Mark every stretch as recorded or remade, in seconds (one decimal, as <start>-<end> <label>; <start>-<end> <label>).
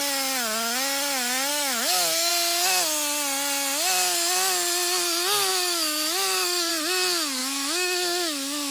0.0-1.5 recorded; 1.5-2.3 remade; 2.3-5.5 recorded; 5.5-6.7 remade; 6.7-7.4 recorded; 7.4-8.7 remade